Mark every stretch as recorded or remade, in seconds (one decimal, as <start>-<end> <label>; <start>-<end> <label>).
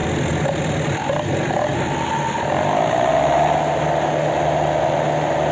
0.0-5.5 recorded